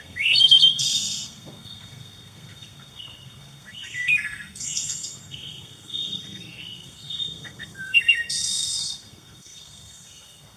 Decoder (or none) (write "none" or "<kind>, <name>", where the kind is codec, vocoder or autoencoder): codec, SNAC